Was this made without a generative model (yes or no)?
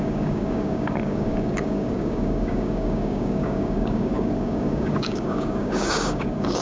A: no